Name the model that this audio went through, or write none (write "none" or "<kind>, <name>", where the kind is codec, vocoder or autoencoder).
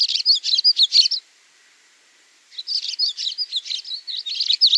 none